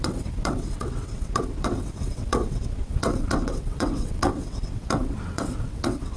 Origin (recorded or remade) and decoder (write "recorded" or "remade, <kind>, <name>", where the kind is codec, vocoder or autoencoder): remade, vocoder, WaveNeXt